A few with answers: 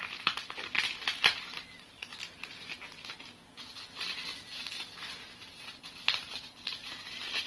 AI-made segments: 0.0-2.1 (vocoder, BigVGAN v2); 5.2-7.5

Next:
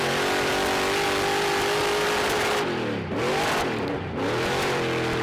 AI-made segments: 0.0-0.5 (vocoder, BigVGAN v2); 3.3-5.2

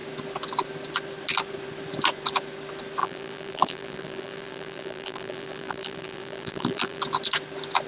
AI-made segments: 3.0-7.0 (vocoder, BigVGAN v2)

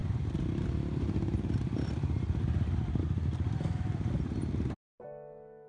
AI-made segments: 0.0-2.3 (vocoder, BigVGAN v2); 4.9-5.7

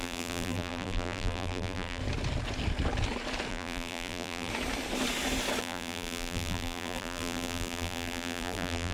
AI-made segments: 0.0-2.0 (vocoder, BigVGAN v2); 3.5-4.5; 5.6-8.9